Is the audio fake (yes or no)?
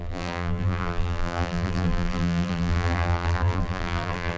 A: yes